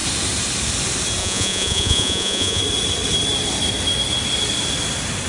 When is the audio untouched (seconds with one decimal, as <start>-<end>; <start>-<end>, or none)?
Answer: 0.0-1.2; 2.6-5.3